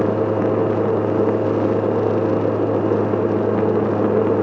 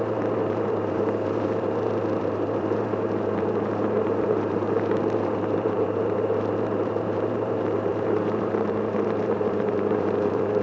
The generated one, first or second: second